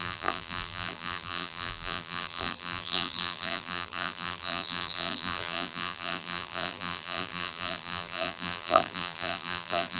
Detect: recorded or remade remade